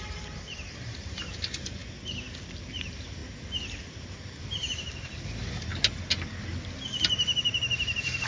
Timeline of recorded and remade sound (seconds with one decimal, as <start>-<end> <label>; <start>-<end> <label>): 0.0-1.8 remade; 1.8-2.7 recorded; 2.7-3.2 remade; 3.2-4.4 recorded; 4.4-5.7 remade; 5.7-7.0 recorded; 7.0-8.3 remade